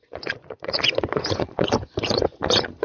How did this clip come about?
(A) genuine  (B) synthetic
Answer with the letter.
B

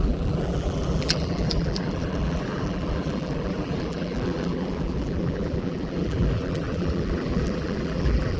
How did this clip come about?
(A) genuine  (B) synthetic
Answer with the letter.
B